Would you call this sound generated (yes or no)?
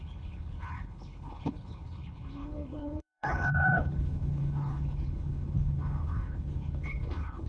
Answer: yes